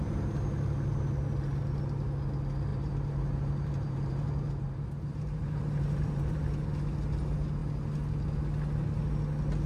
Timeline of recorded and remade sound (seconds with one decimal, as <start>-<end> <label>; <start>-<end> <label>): 0.0-2.7 recorded; 2.7-6.4 remade; 6.4-9.7 recorded